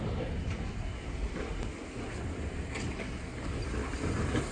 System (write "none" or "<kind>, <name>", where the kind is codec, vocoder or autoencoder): none